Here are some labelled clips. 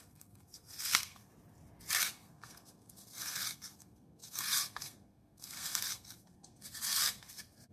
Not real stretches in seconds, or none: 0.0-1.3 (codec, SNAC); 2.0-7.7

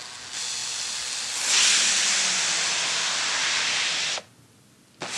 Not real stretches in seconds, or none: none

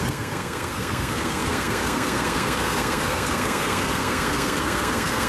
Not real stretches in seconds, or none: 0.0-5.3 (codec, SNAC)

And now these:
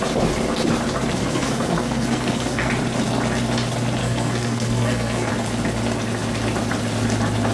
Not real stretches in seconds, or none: 1.2-2.7 (codec, SNAC); 4.0-5.3

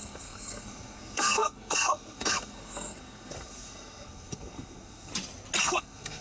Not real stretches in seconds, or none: 0.0-5.1 (codec, SNAC); 5.6-6.2